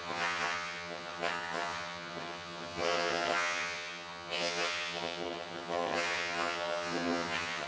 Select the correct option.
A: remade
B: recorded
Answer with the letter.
A